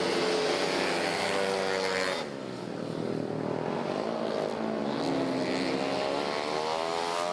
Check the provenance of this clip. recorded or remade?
recorded